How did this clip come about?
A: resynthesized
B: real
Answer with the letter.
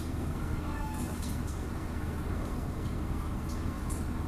A